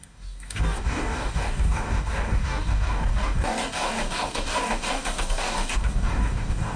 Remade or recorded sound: remade